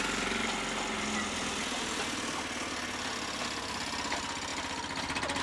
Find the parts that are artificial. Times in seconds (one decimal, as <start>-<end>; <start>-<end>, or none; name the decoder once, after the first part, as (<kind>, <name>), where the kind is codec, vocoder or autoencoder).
none